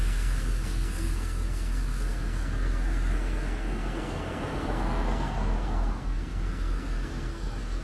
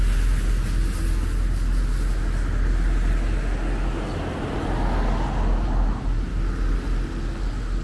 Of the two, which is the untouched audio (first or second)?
second